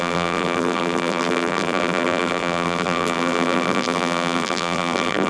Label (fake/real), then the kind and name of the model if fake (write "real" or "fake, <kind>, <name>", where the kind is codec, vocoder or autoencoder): fake, vocoder, BigVGAN v2